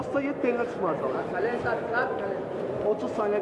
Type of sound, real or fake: real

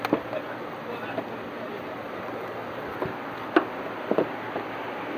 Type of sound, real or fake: real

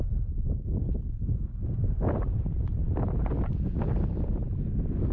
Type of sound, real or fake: real